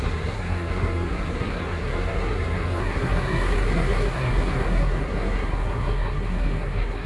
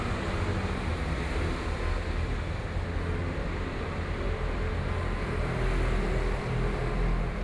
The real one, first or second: second